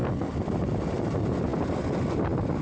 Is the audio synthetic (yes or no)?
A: yes